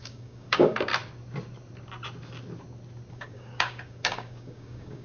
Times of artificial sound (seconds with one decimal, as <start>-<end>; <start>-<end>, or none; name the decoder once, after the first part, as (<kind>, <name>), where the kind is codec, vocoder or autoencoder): 0.0-0.9 (codec, DAC); 3.1-5.0